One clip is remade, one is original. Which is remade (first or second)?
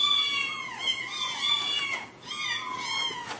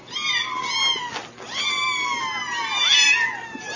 first